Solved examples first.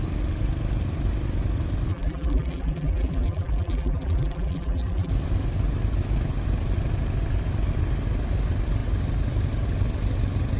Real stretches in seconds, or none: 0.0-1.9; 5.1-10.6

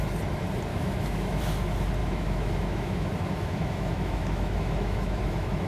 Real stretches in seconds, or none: 0.0-0.7; 1.4-2.0